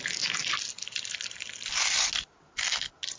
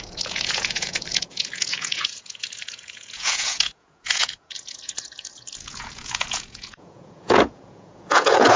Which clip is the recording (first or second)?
first